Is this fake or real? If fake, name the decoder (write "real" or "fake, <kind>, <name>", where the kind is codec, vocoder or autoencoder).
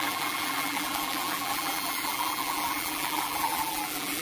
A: fake, vocoder, BigVGAN v2